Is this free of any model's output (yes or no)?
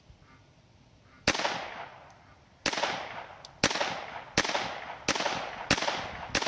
yes